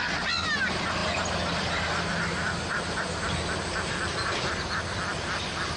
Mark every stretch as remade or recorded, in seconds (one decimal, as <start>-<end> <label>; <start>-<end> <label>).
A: 0.0-5.8 recorded